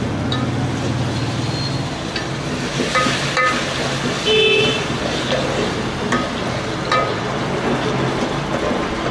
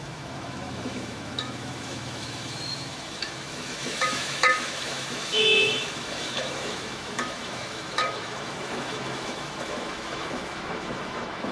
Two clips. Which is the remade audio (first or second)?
second